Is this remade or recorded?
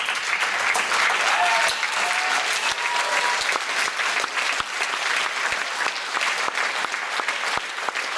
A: recorded